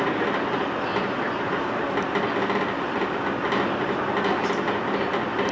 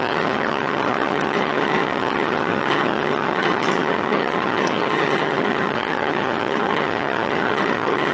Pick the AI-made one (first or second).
second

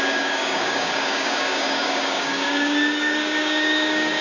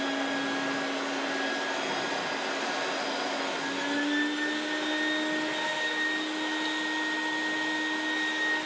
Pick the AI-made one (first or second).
first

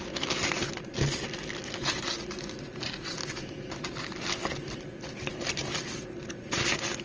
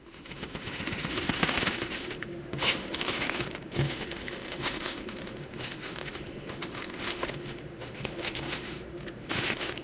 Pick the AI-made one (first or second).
second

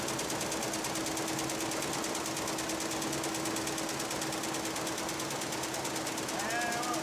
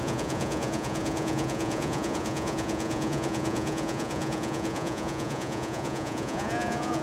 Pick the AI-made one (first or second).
second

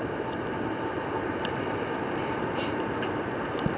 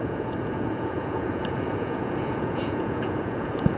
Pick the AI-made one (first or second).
second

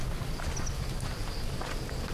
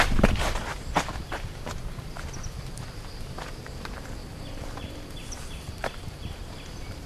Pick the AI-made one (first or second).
second